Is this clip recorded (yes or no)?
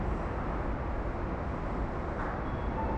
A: yes